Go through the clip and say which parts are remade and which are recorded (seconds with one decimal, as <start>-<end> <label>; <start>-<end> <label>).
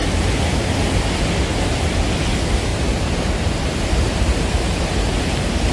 0.0-2.7 recorded; 2.7-5.0 remade; 5.0-5.7 recorded